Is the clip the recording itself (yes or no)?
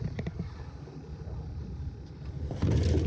yes